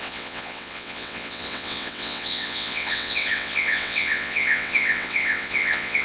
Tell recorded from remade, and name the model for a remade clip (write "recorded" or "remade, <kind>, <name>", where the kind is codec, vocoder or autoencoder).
remade, vocoder, WaveNeXt